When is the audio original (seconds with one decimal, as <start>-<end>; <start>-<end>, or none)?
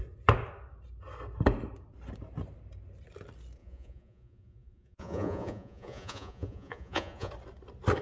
0.0-3.6; 7.3-8.0